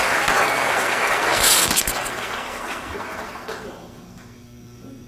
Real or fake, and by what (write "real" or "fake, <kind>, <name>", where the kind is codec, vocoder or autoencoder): fake, codec, SNAC